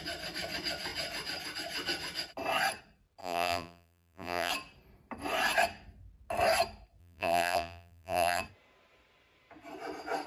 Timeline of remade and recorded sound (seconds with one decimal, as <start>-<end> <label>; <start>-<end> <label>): 0.0-3.2 recorded; 3.2-4.5 remade; 4.5-7.0 recorded; 7.0-8.4 remade; 8.4-10.3 recorded